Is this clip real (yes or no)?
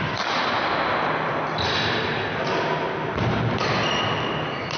yes